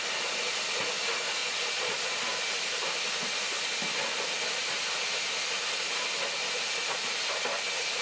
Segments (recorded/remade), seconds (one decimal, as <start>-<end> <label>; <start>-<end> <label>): 0.0-1.4 recorded; 1.4-2.0 remade; 2.0-8.0 recorded